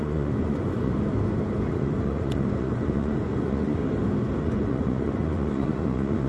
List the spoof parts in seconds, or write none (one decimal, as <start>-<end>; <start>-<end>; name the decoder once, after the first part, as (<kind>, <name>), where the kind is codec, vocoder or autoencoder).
0.0-0.9 (vocoder, Vocos); 1.7-3.8; 4.4-6.3